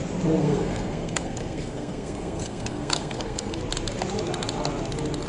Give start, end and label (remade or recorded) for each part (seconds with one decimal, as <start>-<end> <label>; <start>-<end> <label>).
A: 0.0-0.4 recorded; 0.4-3.6 remade; 3.6-5.3 recorded